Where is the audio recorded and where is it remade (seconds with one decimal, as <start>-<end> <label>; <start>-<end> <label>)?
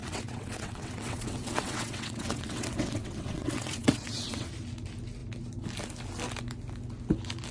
0.0-4.5 remade; 4.5-7.5 recorded